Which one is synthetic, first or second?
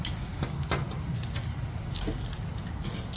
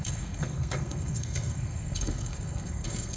second